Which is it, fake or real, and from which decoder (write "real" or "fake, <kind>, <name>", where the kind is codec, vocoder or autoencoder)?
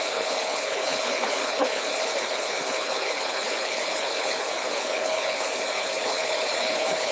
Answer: fake, codec, HILCodec